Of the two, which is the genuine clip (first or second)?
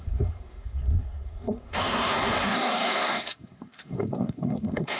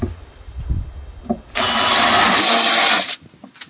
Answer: second